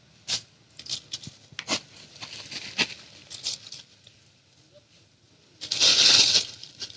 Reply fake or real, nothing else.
real